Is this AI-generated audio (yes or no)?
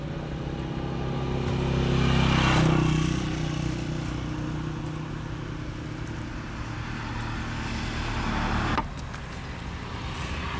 no